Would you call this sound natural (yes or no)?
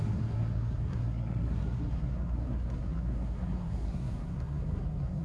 no